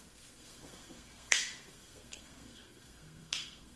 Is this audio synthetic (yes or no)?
yes